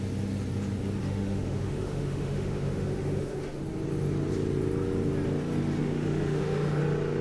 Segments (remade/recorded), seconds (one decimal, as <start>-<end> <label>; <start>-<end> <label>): 0.0-1.0 recorded; 1.0-3.6 remade; 3.6-5.8 recorded; 5.8-6.8 remade; 6.8-7.2 recorded